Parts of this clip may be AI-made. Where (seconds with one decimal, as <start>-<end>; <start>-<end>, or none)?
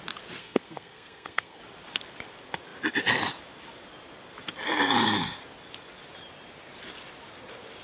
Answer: 0.4-1.6